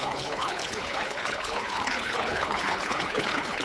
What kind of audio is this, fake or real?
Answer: fake